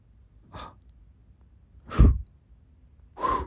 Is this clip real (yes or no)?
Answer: yes